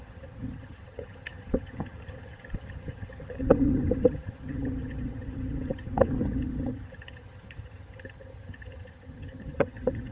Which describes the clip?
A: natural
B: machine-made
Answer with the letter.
B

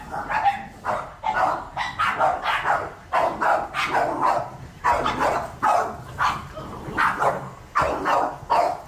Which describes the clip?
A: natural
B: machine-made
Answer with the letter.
A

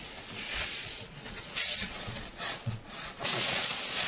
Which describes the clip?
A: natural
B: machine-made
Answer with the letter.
B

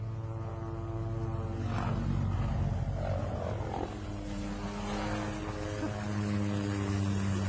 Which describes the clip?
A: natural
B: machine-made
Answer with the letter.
A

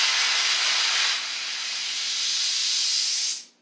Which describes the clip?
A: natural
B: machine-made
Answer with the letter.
A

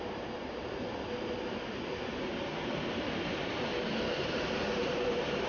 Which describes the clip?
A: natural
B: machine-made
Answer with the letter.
B